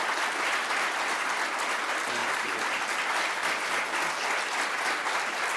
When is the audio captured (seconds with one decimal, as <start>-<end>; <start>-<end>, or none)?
0.0-2.2; 3.0-5.6